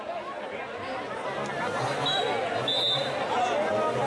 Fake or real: real